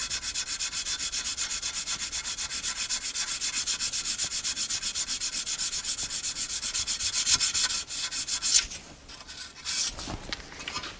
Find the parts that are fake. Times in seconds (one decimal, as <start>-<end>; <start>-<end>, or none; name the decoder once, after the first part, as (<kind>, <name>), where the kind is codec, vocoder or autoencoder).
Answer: none